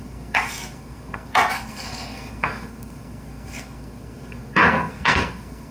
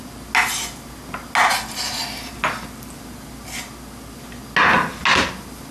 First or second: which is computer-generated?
first